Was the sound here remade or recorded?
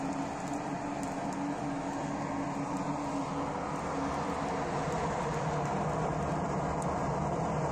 recorded